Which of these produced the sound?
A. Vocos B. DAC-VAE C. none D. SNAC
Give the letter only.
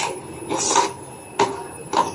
C